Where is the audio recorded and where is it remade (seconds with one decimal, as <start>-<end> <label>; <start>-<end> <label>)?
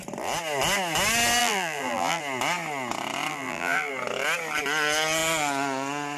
0.0-1.4 recorded; 1.4-2.2 remade; 2.2-3.3 recorded; 3.3-3.9 remade; 3.9-6.2 recorded